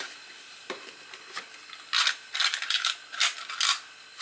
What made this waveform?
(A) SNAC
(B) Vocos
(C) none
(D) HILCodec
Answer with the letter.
C